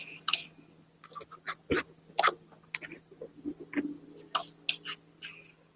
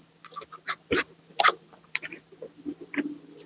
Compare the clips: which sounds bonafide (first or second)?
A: first